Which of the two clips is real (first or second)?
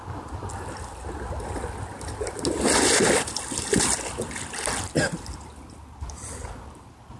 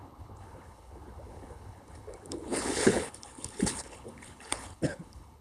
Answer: first